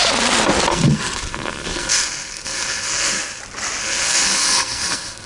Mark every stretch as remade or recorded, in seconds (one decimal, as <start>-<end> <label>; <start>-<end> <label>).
0.0-0.7 recorded; 0.7-3.4 remade; 3.4-3.8 recorded; 3.8-5.3 remade